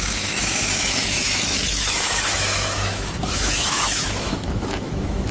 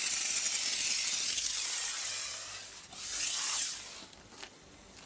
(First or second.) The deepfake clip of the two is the first